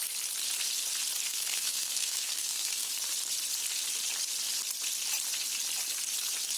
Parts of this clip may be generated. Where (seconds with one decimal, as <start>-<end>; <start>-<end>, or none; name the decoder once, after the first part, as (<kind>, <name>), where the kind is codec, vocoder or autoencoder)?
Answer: 1.3-2.9 (codec, SNAC)